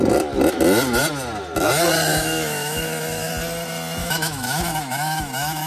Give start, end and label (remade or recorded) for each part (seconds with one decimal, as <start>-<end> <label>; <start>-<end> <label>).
0.0-2.1 recorded; 2.1-3.3 remade; 3.3-4.0 recorded; 4.0-5.7 remade